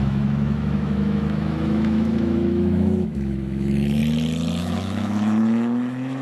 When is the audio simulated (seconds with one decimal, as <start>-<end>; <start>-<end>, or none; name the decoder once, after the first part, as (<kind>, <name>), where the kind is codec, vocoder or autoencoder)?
0.0-4.0 (autoencoder, DAC-VAE); 4.6-6.2